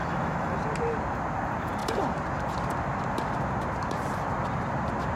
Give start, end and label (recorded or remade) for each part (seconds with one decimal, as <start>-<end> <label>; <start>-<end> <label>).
0.0-0.6 remade; 0.6-5.2 recorded